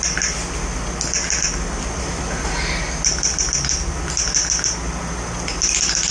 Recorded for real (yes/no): yes